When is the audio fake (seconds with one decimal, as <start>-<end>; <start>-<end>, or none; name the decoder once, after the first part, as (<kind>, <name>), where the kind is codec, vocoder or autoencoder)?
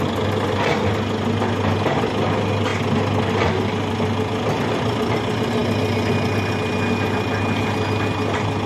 none